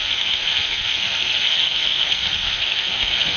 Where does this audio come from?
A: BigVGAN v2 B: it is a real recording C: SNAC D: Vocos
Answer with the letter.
C